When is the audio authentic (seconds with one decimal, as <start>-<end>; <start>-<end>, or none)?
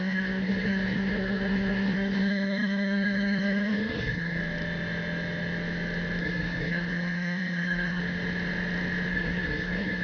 4.4-6.2; 8.0-9.1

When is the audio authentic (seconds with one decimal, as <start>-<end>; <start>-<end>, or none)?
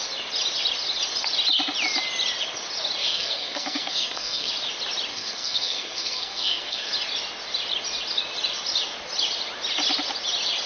0.0-3.0; 4.5-5.1; 6.9-10.7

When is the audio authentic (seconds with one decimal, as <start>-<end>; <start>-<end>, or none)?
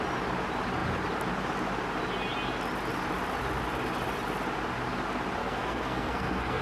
0.0-5.4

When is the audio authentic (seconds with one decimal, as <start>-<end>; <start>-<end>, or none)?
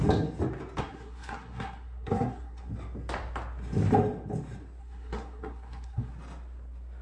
0.0-0.8; 2.7-4.8; 6.1-7.0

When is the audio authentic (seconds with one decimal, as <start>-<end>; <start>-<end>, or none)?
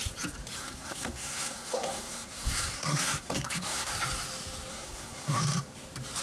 0.0-0.6; 3.9-4.7; 5.4-6.2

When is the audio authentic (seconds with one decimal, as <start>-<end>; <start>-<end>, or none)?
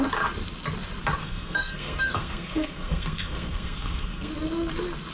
0.0-1.2; 4.3-5.1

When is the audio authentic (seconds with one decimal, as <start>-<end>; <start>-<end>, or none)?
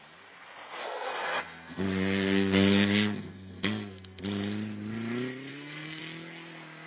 0.0-0.8; 4.2-5.5; 6.0-6.9